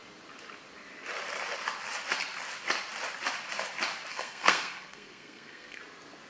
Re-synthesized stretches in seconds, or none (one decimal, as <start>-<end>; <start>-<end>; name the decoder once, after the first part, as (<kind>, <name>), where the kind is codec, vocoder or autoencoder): 4.1-5.8 (codec, SNAC)